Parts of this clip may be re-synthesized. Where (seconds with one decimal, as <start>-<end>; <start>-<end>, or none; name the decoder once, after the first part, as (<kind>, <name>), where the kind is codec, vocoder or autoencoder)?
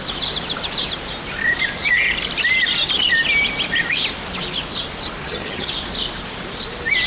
5.2-5.7 (vocoder, HiFi-GAN)